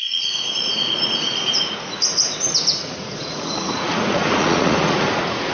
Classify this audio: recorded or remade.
remade